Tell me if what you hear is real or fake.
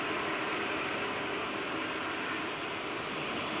real